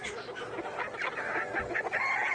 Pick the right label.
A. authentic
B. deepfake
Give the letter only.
A